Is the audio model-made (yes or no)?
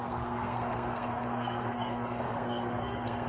yes